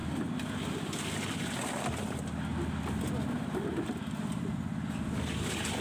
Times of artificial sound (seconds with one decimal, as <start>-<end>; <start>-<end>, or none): none